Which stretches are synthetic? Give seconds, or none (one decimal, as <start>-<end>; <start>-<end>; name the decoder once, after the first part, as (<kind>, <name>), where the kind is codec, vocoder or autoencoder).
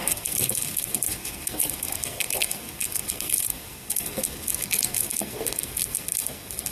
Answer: 0.0-6.7 (codec, SNAC)